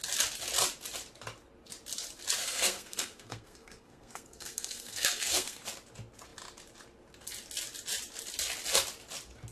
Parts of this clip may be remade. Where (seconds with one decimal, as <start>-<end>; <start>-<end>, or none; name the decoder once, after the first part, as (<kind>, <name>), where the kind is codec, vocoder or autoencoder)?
2.4-5.6 (codec, SNAC)